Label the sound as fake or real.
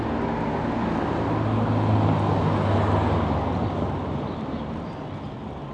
real